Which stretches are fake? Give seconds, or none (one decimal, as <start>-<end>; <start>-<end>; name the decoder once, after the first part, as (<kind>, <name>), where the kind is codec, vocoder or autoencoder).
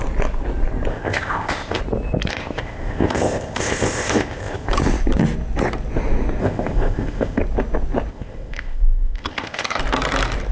0.9-1.8 (codec, ZipCodec); 2.3-4.7; 6.4-7.4; 8.1-9.8